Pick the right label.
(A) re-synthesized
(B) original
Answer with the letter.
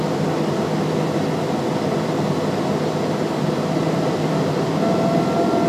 B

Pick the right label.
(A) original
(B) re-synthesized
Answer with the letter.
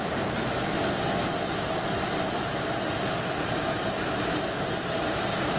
A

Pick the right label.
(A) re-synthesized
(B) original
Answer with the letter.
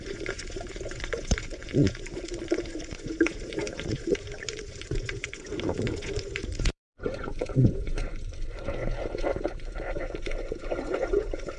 A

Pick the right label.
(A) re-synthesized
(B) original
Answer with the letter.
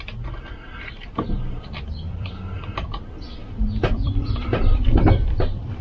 A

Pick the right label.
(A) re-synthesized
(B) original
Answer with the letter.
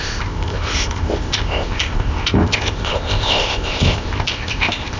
A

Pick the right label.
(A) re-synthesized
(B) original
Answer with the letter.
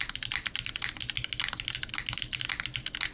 B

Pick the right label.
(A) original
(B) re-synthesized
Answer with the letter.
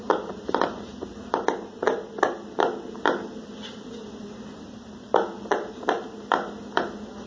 A